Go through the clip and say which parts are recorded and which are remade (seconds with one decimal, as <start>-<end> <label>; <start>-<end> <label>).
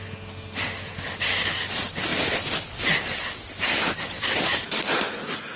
0.0-2.1 recorded; 2.1-5.6 remade